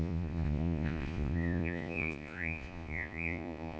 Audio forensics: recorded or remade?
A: remade